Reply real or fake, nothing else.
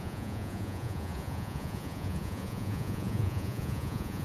fake